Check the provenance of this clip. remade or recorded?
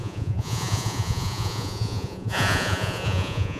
remade